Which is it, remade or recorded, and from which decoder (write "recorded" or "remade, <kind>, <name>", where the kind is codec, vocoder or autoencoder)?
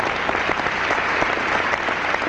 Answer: recorded